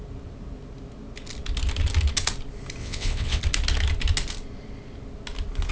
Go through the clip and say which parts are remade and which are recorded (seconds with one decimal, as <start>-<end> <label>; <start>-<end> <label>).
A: 0.0-2.8 recorded; 2.8-3.4 remade; 3.4-5.7 recorded